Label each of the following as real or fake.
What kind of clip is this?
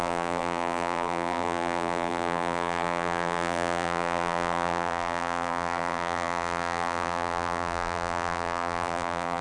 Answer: fake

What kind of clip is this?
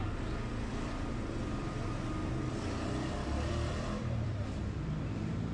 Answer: fake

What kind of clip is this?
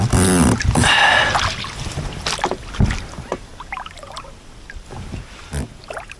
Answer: real